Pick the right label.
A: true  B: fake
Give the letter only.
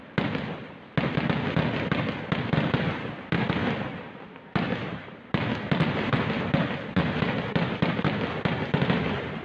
A